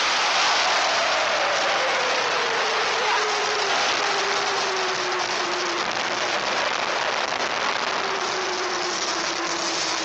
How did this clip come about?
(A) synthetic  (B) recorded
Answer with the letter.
B